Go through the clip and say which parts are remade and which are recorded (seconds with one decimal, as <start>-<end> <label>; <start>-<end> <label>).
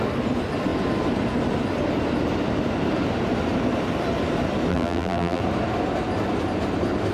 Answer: 0.0-4.7 recorded; 4.7-5.4 remade; 5.4-7.1 recorded